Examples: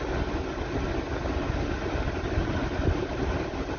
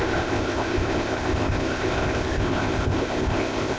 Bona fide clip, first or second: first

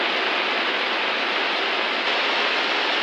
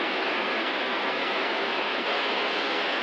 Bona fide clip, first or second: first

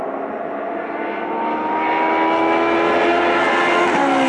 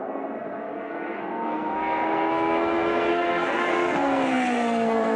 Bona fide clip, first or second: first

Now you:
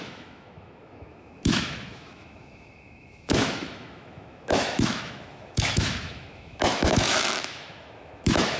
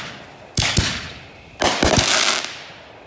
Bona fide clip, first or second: second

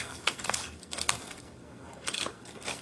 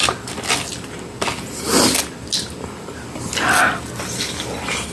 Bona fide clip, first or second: second